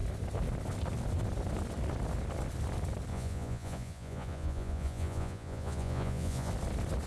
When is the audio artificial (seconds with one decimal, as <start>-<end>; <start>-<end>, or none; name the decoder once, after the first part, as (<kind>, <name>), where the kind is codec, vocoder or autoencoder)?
3.1-6.5 (vocoder, Vocos)